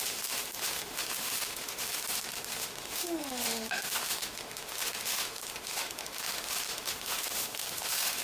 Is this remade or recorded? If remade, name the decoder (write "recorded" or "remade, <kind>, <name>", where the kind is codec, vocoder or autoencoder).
remade, autoencoder, DAC-VAE